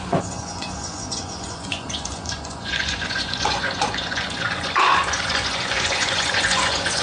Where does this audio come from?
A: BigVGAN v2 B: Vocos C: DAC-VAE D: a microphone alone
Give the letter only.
B